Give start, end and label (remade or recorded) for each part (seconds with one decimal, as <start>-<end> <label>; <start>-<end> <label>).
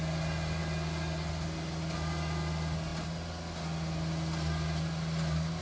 0.0-5.6 recorded